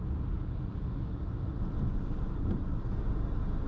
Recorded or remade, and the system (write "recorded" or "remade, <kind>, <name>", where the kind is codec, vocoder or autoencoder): recorded